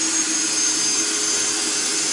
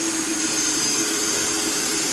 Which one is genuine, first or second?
first